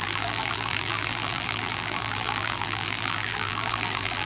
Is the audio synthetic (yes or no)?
yes